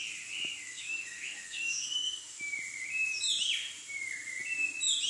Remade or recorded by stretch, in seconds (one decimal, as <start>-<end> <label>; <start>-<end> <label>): 0.0-0.7 recorded; 0.7-2.4 remade; 2.4-5.1 recorded